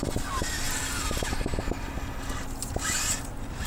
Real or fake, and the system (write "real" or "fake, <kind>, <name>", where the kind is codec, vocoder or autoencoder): real